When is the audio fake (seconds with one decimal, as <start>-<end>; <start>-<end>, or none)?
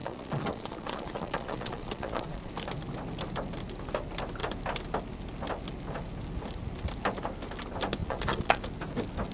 0.0-2.5; 8.0-8.6